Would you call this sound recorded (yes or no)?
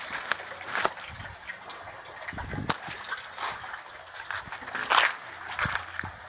yes